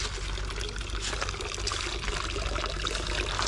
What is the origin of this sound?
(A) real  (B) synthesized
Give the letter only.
A